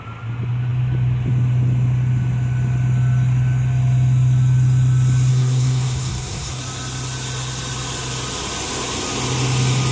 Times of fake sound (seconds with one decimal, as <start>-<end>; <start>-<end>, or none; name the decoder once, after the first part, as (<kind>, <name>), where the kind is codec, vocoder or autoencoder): 5.3-6.6 (codec, SNAC)